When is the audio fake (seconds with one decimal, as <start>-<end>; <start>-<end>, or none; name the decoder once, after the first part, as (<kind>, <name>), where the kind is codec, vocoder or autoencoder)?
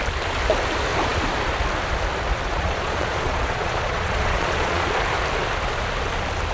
2.5-5.0 (vocoder, Vocos)